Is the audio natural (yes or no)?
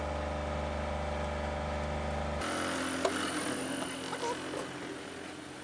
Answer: yes